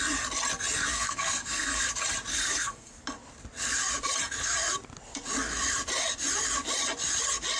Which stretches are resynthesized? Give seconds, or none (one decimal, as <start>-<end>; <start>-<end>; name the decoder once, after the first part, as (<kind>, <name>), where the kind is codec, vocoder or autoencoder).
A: 0.9-1.9 (codec, SNAC); 2.3-2.9